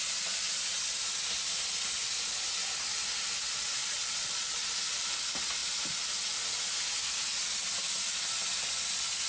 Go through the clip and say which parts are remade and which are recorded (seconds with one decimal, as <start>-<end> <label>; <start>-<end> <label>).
0.0-3.8 recorded; 3.8-4.7 remade; 4.7-9.3 recorded